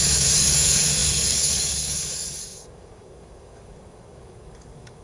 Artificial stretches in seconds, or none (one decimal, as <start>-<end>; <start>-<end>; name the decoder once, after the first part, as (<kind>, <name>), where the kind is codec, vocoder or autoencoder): 0.0-5.0 (codec, DAC)